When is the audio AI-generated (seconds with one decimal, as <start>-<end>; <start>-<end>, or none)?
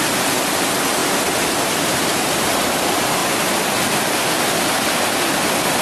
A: none